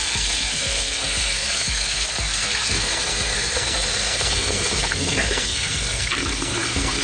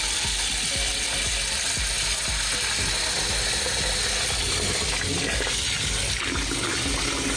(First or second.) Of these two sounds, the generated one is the first